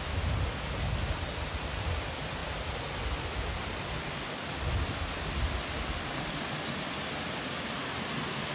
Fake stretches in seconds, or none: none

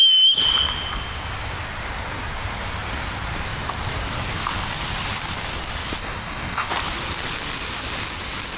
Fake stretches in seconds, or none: 6.0-6.7 (codec, DAC)

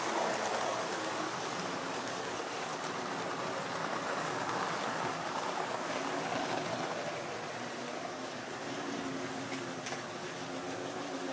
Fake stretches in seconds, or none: 0.0-2.7 (codec, DAC); 3.8-6.7; 7.8-11.3

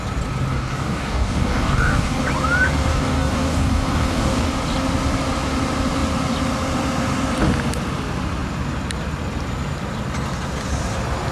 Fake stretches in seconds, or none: 0.5-2.2 (codec, DAC); 2.9-4.5

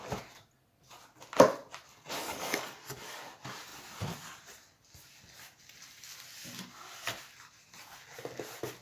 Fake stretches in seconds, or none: 2.2-3.3 (codec, DAC)

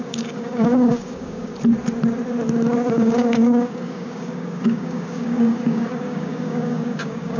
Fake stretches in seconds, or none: 0.0-1.5 (codec, DAC); 2.9-7.4

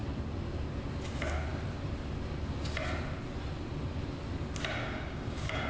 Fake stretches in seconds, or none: 4.8-5.7 (codec, DAC)